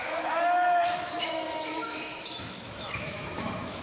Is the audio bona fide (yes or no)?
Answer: no